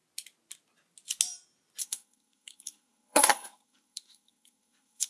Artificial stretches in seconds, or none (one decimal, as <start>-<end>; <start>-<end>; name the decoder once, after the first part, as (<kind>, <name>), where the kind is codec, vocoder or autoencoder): 1.8-5.1 (codec, SNAC)